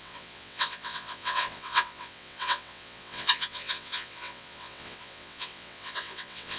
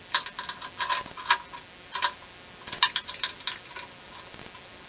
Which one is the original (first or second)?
second